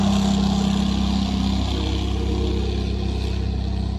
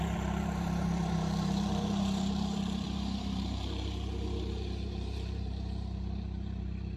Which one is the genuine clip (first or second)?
first